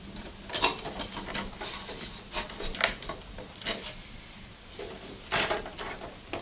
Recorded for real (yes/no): yes